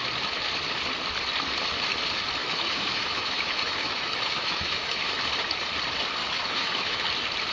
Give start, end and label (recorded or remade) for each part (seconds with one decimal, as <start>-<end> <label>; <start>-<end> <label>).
0.0-2.4 recorded; 2.4-5.1 remade; 5.1-6.2 recorded; 6.2-7.0 remade; 7.0-7.5 recorded